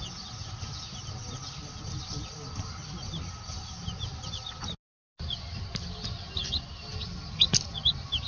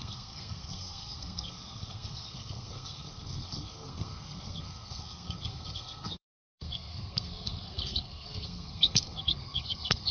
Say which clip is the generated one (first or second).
second